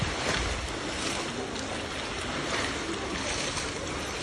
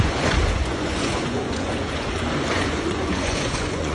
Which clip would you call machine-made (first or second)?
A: second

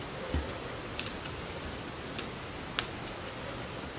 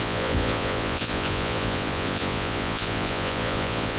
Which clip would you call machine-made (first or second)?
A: second